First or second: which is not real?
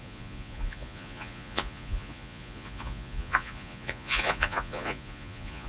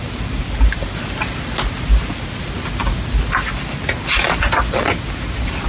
first